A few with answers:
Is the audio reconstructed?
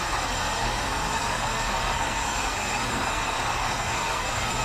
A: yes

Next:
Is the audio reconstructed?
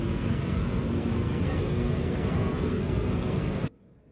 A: yes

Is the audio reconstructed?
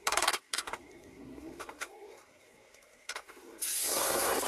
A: yes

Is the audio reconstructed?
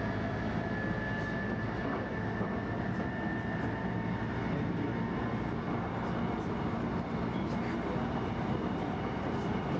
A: no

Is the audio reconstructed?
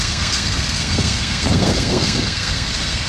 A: yes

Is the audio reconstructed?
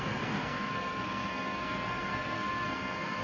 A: yes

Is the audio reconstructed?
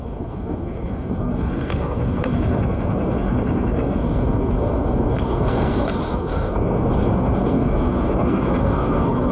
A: yes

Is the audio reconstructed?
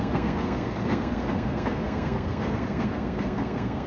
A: yes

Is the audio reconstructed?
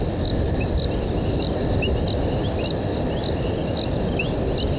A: no